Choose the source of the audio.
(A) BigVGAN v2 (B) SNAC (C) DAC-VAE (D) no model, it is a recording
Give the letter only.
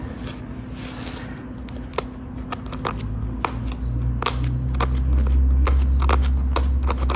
D